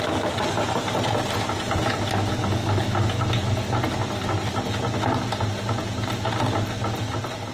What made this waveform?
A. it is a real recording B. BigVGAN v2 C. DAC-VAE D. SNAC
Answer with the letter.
A